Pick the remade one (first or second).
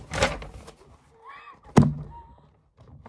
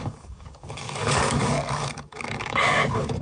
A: second